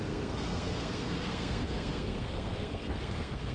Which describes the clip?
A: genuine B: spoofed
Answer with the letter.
B